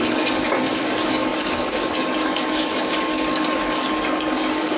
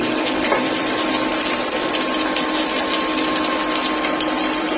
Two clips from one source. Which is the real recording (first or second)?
second